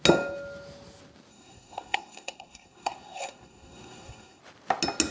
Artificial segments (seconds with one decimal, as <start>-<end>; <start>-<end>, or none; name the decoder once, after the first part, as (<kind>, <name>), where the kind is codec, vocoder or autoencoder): 1.3-4.4 (codec, SNAC)